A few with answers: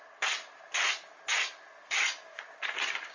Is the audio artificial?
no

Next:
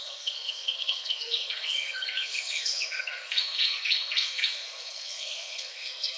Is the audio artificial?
yes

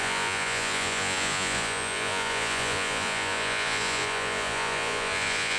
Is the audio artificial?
yes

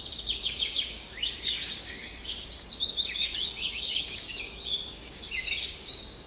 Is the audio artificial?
yes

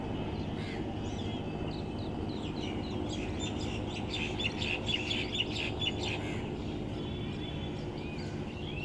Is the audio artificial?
no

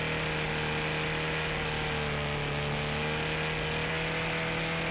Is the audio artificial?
no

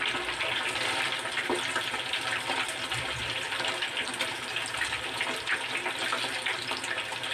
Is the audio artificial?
yes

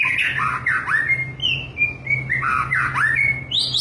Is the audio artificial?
no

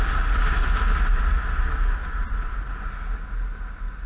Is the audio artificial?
no